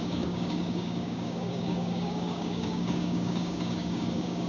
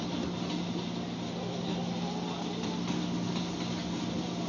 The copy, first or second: first